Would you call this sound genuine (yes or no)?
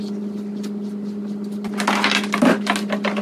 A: yes